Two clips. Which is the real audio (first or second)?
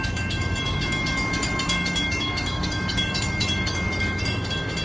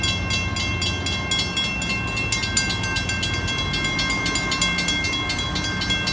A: second